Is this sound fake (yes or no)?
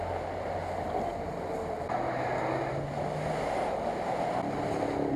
no